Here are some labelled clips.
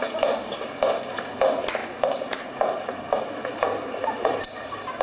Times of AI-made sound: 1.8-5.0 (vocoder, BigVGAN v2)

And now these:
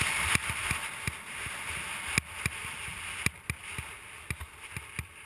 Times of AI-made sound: none

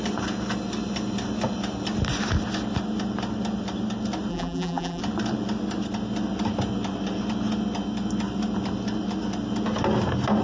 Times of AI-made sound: 4.3-5.0 (vocoder, BigVGAN v2)

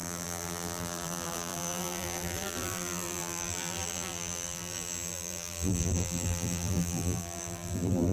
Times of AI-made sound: 0.0-8.1 (vocoder, BigVGAN v2)

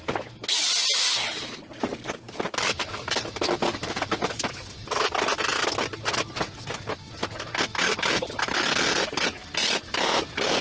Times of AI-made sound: 1.9-4.5 (vocoder, BigVGAN v2)

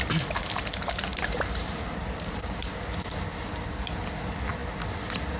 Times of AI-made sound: 1.1-2.8 (vocoder, BigVGAN v2)

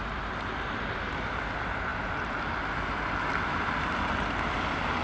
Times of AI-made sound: 0.0-5.0 (vocoder, BigVGAN v2)